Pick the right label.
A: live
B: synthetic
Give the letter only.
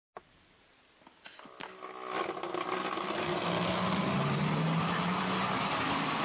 A